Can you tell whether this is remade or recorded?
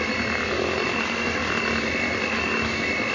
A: recorded